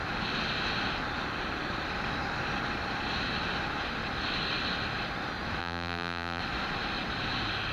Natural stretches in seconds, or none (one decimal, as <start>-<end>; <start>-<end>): 0.0-5.6; 6.4-7.7